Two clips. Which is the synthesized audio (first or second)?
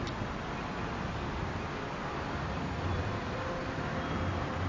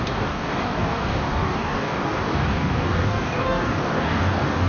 second